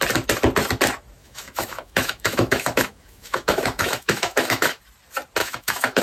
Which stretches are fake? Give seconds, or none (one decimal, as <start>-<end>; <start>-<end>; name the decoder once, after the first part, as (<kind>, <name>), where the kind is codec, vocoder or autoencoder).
1.2-4.8 (autoencoder, DAC-VAE); 5.4-6.0